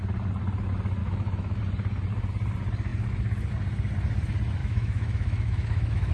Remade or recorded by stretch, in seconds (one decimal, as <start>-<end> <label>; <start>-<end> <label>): 0.0-1.0 recorded; 1.0-1.6 remade; 1.6-4.6 recorded; 4.6-6.1 remade